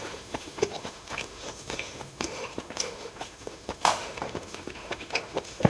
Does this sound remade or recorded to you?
remade